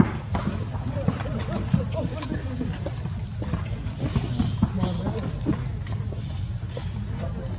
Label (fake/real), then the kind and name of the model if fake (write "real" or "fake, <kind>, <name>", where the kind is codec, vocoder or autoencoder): real